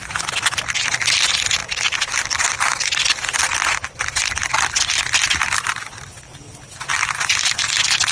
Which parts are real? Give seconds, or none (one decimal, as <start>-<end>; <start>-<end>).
0.0-8.1